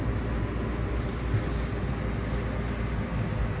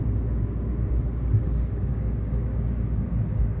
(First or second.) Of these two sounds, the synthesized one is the second